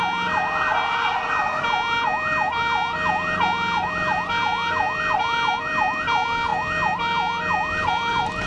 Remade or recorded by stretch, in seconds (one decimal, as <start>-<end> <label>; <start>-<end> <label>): 0.0-8.5 recorded